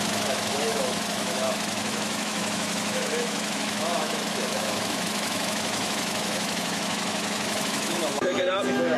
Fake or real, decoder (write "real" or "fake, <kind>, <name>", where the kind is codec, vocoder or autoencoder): fake, autoencoder, DAC-VAE